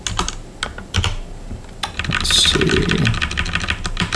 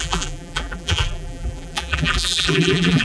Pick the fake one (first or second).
second